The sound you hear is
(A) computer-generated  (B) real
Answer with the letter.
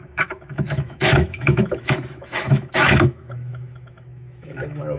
A